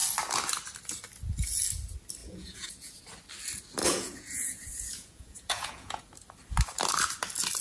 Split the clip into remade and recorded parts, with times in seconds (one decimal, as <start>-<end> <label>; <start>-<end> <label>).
0.0-2.2 recorded; 2.2-3.0 remade; 3.0-3.8 recorded; 3.8-6.0 remade; 6.0-7.6 recorded

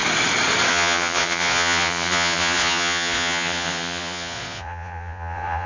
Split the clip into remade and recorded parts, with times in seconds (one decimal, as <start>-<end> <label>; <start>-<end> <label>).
0.0-0.7 recorded; 0.7-5.7 remade

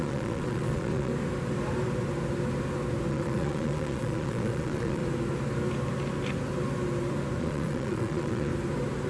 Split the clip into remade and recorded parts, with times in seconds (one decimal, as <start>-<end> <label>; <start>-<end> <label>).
0.0-1.1 remade; 1.1-3.1 recorded; 3.1-5.0 remade; 5.0-7.4 recorded; 7.4-8.5 remade; 8.5-9.1 recorded

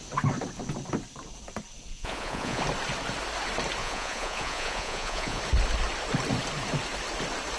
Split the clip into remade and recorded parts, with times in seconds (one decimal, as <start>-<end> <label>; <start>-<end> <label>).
0.0-1.9 recorded; 1.9-2.6 remade; 2.6-3.8 recorded; 3.8-5.4 remade; 5.4-7.6 recorded

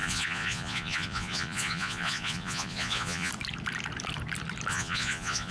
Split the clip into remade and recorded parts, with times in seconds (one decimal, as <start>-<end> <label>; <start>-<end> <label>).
0.0-3.3 remade; 3.3-4.7 recorded; 4.7-5.5 remade

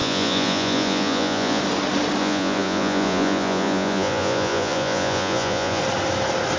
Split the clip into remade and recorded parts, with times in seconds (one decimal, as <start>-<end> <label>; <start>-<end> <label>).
0.0-1.6 remade; 1.6-2.2 recorded; 2.2-5.8 remade; 5.8-6.6 recorded

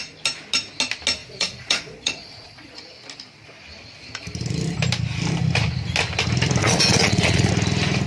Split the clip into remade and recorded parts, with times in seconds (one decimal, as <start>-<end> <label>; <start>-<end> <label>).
0.0-1.2 recorded; 1.2-2.8 remade; 2.8-6.6 recorded; 6.6-7.5 remade; 7.5-8.1 recorded

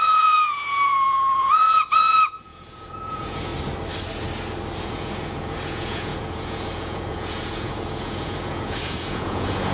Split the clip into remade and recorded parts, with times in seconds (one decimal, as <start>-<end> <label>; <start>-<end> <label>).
0.0-3.5 remade; 3.5-4.8 recorded; 4.8-9.7 remade